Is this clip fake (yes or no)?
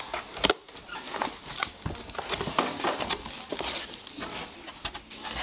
no